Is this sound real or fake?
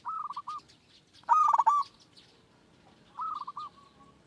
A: real